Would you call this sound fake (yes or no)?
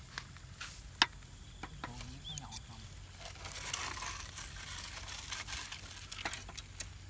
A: no